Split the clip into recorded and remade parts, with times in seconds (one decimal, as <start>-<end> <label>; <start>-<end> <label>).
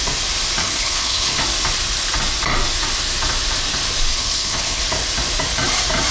0.0-0.6 recorded; 0.6-1.4 remade; 1.4-4.1 recorded; 4.1-4.8 remade; 4.8-6.1 recorded